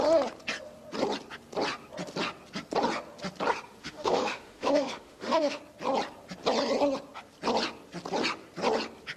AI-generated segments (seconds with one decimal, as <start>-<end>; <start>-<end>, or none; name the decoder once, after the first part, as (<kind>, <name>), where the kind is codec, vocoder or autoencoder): 3.8-5.6 (autoencoder, DAC-VAE)